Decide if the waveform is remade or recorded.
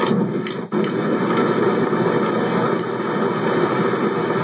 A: recorded